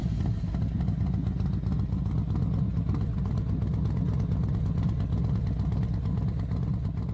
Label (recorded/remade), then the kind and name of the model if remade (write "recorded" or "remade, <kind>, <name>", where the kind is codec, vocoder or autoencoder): recorded